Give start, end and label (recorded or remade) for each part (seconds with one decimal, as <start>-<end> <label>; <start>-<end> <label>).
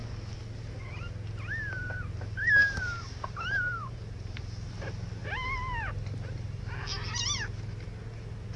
0.0-2.6 recorded; 2.6-4.7 remade; 4.7-5.2 recorded; 5.2-6.6 remade; 6.6-8.6 recorded